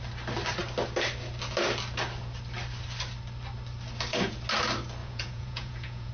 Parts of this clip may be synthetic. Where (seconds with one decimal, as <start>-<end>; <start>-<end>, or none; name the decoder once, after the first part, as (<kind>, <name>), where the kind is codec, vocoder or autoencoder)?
5.0-6.1 (vocoder, Vocos)